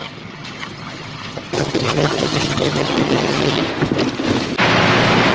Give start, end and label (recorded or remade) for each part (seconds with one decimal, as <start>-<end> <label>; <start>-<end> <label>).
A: 0.0-3.6 remade; 3.6-5.3 recorded